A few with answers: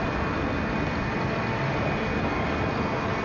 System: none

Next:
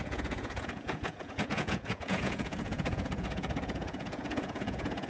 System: vocoder, Vocos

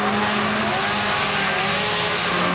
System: none